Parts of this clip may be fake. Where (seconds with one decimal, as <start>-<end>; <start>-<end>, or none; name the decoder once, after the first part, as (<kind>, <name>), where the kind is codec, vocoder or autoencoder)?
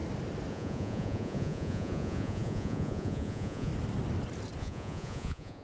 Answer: 0.5-3.7 (vocoder, Vocos); 4.6-5.6